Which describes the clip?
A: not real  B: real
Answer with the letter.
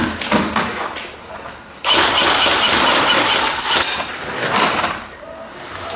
B